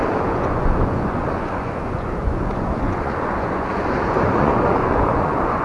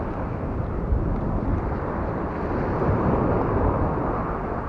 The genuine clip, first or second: second